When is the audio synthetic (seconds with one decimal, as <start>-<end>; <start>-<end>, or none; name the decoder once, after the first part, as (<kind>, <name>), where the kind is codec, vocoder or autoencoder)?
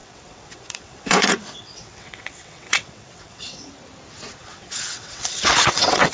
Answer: 0.0-3.7 (vocoder, WaveNeXt); 4.4-6.1